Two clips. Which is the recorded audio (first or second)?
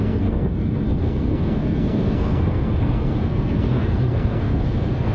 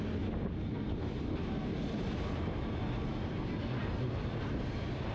second